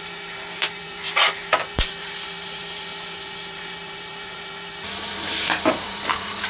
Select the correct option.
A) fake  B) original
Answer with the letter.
A